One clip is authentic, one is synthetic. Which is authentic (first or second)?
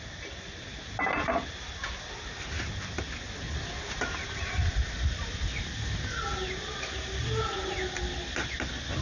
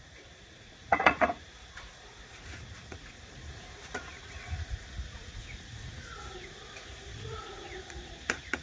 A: first